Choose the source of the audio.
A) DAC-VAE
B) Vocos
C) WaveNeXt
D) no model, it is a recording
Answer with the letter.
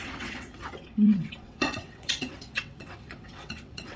C